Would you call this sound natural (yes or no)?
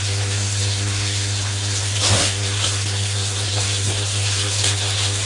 no